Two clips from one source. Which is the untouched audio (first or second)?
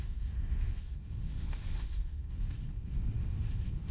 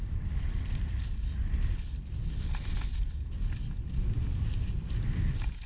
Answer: second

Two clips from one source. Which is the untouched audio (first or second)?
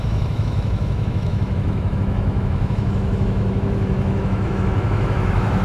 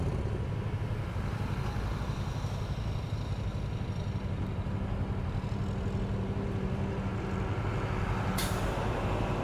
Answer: second